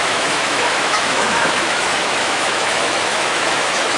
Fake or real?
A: fake